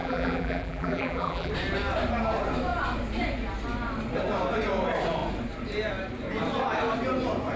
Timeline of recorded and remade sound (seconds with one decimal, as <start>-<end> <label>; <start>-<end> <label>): 0.0-1.5 remade; 1.5-7.6 recorded